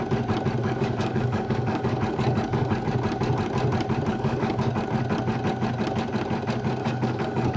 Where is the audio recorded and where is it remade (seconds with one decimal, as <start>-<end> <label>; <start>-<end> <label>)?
0.0-0.6 recorded; 0.6-2.9 remade; 2.9-4.1 recorded; 4.1-4.7 remade; 4.7-6.8 recorded; 6.8-7.6 remade